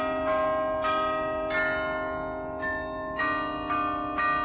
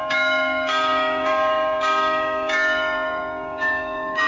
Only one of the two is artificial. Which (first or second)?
second